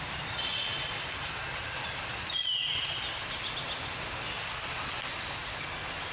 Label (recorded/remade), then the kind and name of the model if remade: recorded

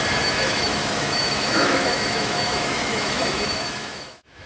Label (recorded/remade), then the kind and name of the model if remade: remade, autoencoder, DAC-VAE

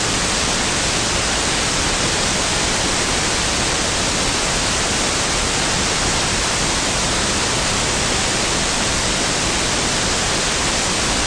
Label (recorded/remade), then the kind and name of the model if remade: recorded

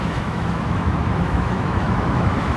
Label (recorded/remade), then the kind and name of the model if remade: remade, autoencoder, DAC-VAE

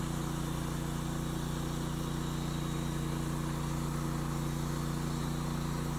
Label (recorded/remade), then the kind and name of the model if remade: recorded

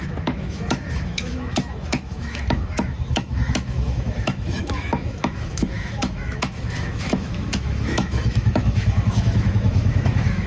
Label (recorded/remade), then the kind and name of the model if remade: remade, autoencoder, DAC-VAE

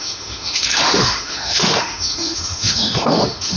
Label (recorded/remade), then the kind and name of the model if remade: remade, autoencoder, DAC-VAE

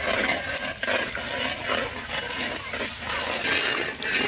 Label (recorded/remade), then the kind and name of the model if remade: recorded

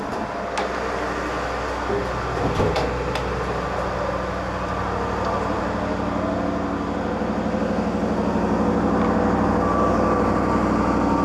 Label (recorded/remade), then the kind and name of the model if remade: recorded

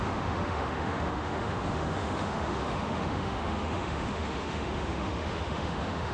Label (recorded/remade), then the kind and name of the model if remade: remade, autoencoder, DAC-VAE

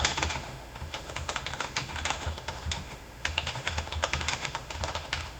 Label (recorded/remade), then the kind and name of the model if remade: remade, autoencoder, DAC-VAE